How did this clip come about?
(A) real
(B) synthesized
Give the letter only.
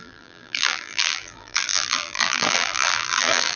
B